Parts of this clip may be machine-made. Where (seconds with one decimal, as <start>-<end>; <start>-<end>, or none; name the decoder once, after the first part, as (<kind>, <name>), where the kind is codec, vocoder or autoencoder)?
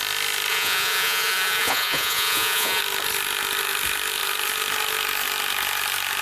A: 0.5-2.8 (vocoder, Vocos)